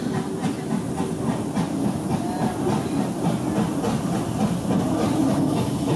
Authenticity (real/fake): real